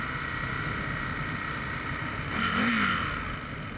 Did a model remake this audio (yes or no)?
no